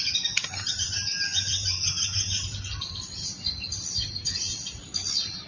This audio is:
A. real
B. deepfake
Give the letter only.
A